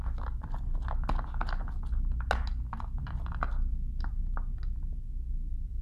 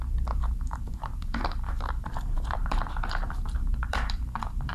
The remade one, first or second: second